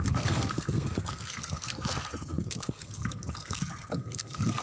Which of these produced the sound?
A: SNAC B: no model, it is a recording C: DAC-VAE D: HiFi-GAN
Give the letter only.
A